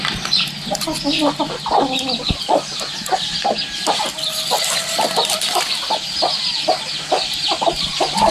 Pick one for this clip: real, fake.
real